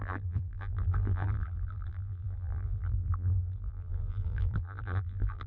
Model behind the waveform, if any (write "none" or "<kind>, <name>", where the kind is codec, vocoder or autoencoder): vocoder, BigVGAN v2